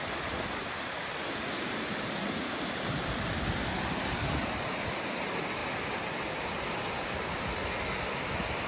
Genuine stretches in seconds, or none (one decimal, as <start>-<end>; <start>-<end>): 0.0-8.7